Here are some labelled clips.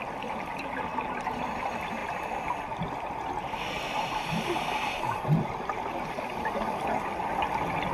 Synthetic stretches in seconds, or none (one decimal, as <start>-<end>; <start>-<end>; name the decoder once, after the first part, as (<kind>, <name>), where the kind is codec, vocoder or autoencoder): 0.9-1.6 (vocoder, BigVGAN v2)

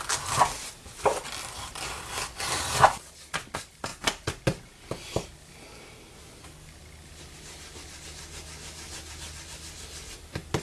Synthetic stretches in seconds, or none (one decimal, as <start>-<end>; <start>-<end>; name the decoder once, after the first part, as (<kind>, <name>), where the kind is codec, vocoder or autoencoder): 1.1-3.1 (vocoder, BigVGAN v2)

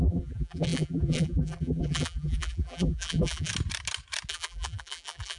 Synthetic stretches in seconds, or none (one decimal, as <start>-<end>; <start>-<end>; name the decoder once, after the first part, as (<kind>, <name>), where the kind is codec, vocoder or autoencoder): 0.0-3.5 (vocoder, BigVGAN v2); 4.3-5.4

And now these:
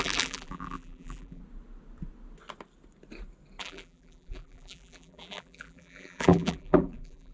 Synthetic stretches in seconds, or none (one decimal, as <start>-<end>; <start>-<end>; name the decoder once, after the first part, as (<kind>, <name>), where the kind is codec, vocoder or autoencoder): 0.0-1.4 (vocoder, BigVGAN v2); 3.6-7.3

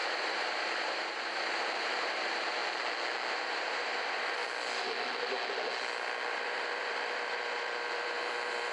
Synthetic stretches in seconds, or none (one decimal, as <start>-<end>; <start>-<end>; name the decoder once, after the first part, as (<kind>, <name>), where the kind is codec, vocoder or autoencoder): 0.0-2.6 (vocoder, BigVGAN v2); 3.3-4.4; 6.3-8.7

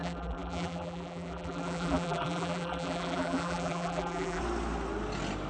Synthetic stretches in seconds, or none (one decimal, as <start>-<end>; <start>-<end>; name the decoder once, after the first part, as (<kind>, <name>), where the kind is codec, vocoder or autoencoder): 0.0-4.4 (vocoder, BigVGAN v2)